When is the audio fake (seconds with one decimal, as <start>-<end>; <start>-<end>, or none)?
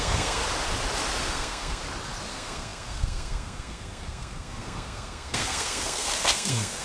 0.0-0.4; 1.2-1.8; 2.3-6.8